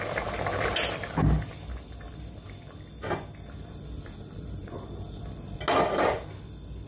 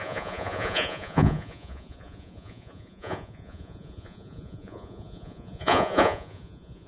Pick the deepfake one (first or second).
second